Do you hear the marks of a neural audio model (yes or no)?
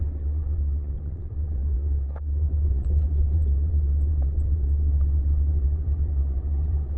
yes